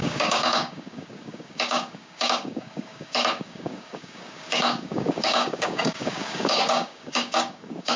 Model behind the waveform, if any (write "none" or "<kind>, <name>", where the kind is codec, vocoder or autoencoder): codec, DAC